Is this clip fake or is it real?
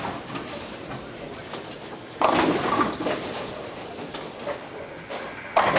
real